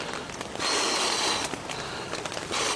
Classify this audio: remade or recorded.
recorded